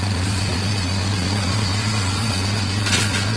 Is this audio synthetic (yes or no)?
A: yes